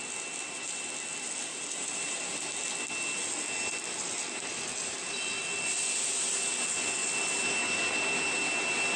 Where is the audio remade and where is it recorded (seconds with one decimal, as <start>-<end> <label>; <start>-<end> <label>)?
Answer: 0.0-1.5 recorded; 1.5-2.2 remade; 2.2-9.0 recorded